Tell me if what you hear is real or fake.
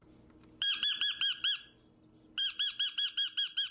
real